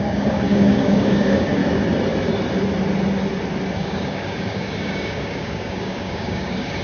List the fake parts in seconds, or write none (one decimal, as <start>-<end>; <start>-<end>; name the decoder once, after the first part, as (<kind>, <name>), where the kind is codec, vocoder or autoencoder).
0.0-1.6 (codec, DAC); 3.7-6.8